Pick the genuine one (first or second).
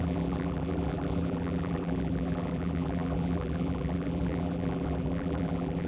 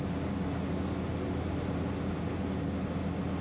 second